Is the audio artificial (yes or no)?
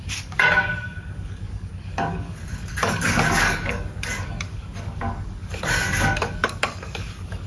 yes